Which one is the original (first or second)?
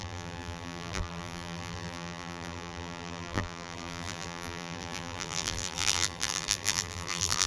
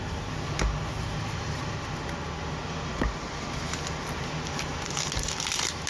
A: second